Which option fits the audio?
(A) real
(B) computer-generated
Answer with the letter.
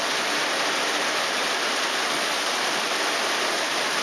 A